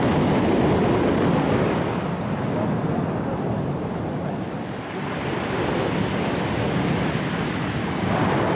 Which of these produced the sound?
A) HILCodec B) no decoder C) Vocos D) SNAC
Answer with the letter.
B